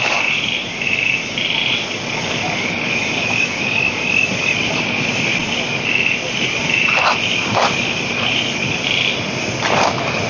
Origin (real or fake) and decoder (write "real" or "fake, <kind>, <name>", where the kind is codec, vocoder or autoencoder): real